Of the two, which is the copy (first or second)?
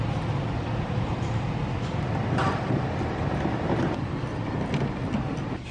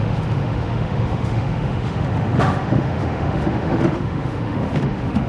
second